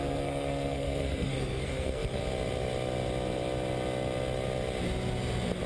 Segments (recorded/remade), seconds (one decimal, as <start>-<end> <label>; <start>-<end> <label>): 0.0-2.2 remade; 2.2-5.7 recorded